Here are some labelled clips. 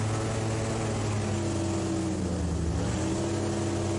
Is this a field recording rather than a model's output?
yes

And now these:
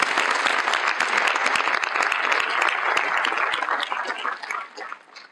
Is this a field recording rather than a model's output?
yes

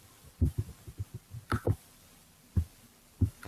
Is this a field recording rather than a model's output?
yes